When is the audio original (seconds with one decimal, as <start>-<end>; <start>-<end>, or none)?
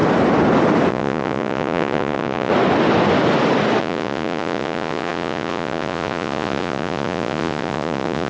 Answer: 0.0-0.9; 2.5-3.8